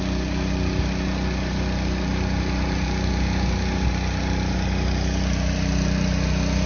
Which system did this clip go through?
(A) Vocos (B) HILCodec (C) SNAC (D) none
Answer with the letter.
D